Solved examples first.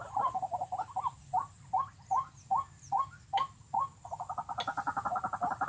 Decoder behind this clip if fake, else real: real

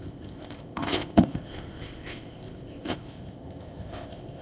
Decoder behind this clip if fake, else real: fake, codec, ZipCodec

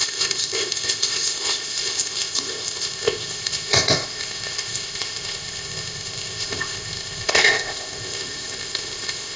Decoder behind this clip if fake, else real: fake, codec, ZipCodec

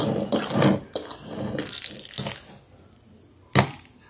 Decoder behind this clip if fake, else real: real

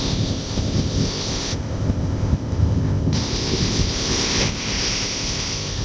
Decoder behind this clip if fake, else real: fake, codec, ZipCodec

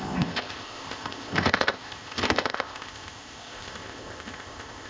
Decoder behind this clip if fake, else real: fake, codec, ZipCodec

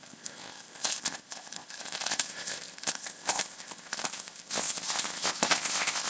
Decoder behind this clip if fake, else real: fake, codec, ZipCodec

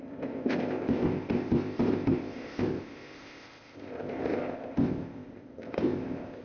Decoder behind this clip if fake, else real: fake, codec, ZipCodec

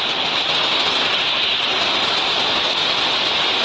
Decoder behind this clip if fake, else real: real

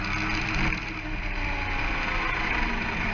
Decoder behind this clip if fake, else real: real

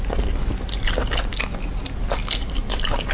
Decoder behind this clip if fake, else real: real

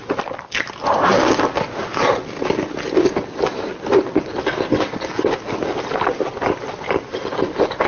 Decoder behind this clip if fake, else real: real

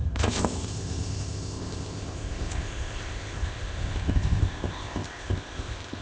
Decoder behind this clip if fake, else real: fake, codec, ZipCodec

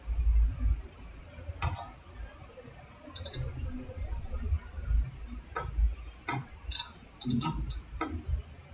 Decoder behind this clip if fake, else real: real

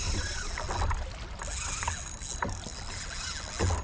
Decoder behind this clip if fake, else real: real